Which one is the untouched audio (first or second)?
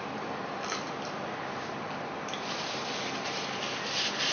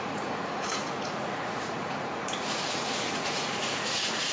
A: first